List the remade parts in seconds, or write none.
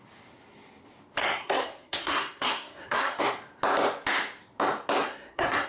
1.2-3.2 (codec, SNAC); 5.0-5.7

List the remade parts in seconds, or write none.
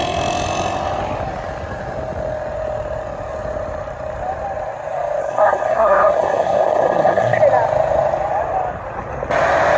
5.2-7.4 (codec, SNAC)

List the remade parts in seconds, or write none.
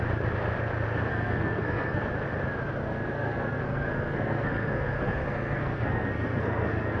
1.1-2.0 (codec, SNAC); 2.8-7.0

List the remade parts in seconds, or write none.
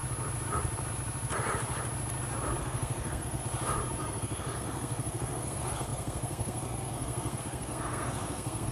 2.6-3.4 (codec, SNAC); 4.0-8.7